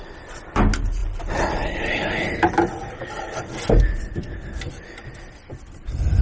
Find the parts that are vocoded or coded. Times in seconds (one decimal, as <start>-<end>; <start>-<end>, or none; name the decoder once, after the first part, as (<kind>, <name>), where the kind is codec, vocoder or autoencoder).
1.0-3.4 (vocoder, BigVGAN v2)